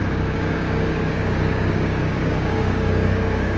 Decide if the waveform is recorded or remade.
remade